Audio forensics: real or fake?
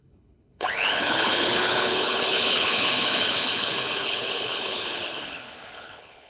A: fake